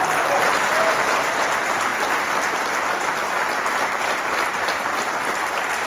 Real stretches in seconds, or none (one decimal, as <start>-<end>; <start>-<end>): 0.0-5.9